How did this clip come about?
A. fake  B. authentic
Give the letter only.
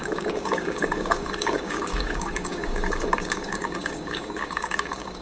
A